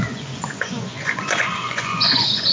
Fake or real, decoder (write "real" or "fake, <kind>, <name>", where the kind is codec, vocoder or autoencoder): fake, vocoder, Vocos